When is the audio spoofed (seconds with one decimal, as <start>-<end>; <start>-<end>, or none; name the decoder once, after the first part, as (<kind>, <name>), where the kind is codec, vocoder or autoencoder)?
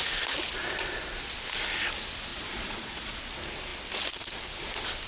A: 2.3-3.2 (vocoder, Vocos)